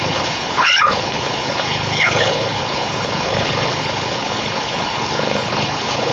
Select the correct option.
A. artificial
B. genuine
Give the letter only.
A